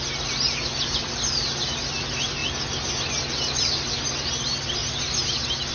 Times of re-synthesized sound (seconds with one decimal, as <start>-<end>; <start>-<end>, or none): none